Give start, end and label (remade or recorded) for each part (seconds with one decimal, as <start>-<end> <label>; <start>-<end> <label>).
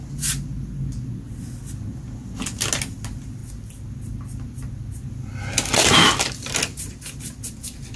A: 0.0-8.0 recorded